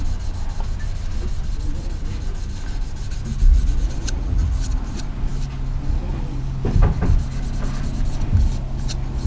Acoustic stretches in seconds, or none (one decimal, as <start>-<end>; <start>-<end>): 0.0-3.5; 4.8-9.3

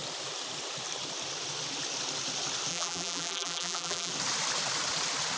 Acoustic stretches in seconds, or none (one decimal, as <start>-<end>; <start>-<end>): 0.0-2.7; 4.1-5.4

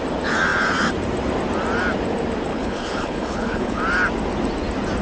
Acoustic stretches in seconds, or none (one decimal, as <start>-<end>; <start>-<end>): 0.0-2.5; 3.8-5.0

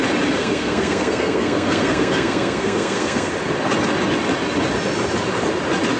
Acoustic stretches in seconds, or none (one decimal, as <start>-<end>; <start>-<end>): 0.0-0.4; 3.3-6.0

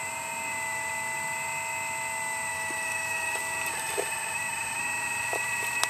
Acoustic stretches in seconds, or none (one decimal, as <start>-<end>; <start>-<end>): 0.0-2.5; 3.4-5.9

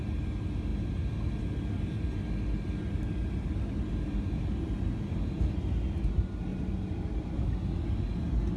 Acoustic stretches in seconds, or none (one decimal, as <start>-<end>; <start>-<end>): 0.0-8.6

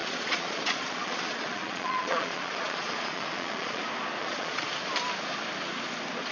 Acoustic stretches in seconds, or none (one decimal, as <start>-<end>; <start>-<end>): 3.8-4.2; 4.7-6.3